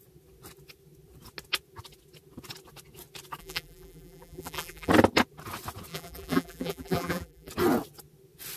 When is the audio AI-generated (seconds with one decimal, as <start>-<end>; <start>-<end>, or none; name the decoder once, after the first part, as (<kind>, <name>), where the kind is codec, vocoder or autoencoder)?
3.4-4.9 (vocoder, BigVGAN v2); 5.9-7.5